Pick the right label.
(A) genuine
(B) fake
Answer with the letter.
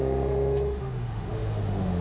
B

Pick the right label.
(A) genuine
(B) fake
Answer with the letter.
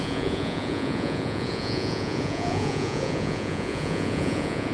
B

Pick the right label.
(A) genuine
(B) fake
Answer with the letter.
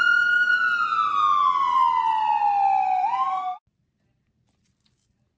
A